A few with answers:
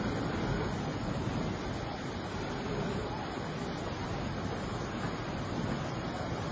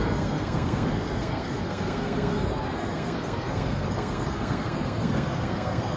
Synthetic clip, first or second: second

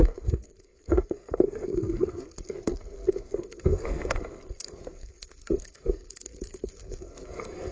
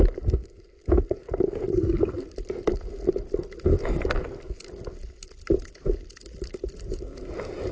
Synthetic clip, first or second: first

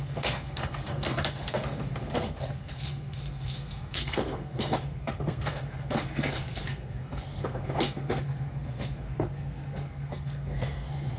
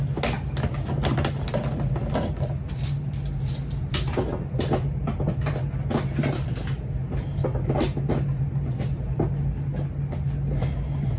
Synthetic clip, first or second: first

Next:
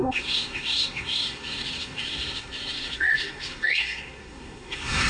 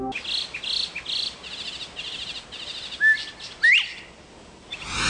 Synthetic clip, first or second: first